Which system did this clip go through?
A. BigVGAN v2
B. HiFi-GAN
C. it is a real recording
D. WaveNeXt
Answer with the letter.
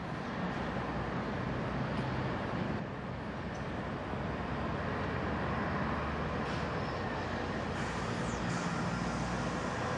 C